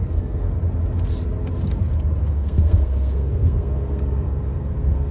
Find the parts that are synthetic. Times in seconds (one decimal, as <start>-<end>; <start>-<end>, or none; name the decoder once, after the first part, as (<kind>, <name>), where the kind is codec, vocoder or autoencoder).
0.0-0.6 (codec, SNAC); 2.2-5.1